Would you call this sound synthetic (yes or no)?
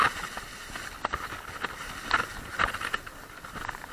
no